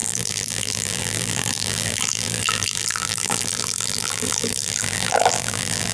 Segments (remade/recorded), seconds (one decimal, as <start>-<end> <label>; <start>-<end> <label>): 0.0-5.9 remade